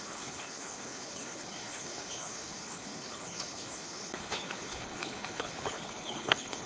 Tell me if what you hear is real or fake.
fake